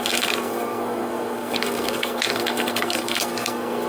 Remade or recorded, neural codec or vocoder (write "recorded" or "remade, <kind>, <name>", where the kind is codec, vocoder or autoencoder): remade, codec, SNAC